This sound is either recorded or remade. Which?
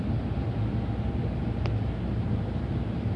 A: recorded